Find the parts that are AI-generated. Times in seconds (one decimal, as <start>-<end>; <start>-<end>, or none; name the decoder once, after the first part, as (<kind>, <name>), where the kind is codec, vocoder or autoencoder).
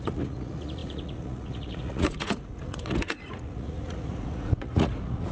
0.0-5.3 (vocoder, Vocos)